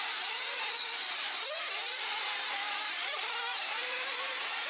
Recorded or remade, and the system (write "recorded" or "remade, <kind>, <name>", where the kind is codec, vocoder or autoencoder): remade, vocoder, BigVGAN v2